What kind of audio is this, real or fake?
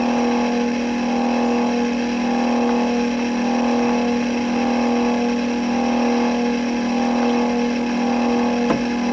real